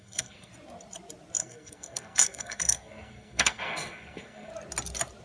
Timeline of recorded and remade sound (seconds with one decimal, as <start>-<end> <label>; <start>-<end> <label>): 0.0-0.5 remade; 0.5-1.4 recorded; 1.4-4.5 remade; 4.5-5.2 recorded